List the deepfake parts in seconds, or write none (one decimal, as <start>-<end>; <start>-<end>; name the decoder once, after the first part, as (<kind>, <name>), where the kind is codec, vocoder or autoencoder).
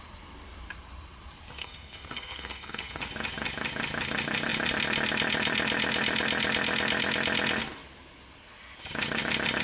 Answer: 1.6-3.0 (codec, SNAC)